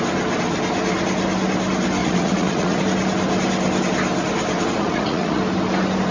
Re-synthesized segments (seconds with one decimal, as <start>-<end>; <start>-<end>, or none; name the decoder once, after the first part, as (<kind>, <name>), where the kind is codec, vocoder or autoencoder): 2.0-2.8 (vocoder, Vocos); 4.8-5.4